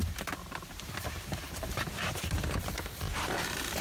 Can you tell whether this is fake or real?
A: fake